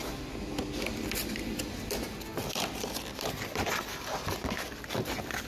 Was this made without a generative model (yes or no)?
yes